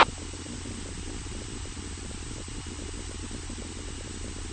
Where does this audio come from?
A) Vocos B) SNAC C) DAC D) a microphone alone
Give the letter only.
D